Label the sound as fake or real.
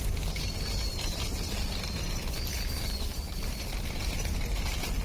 real